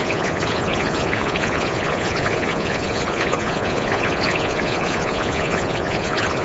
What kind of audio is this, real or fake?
fake